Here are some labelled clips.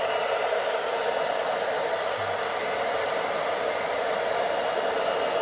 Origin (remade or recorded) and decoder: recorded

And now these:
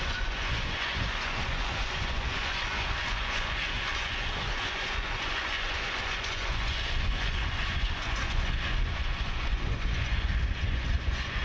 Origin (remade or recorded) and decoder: remade, vocoder, Vocos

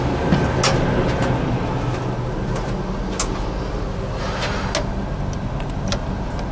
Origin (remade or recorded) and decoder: recorded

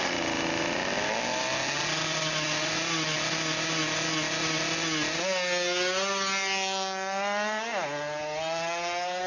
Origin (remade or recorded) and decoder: recorded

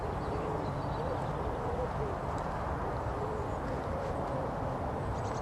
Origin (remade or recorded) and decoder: recorded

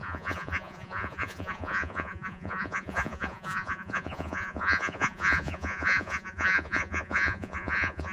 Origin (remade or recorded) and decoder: remade, vocoder, Vocos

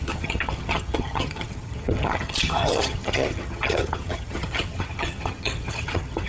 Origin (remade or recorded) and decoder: remade, vocoder, HiFi-GAN